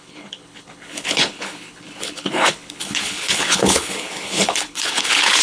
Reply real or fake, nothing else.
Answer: fake